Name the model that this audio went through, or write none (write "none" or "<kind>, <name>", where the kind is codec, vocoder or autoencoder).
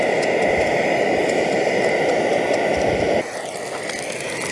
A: none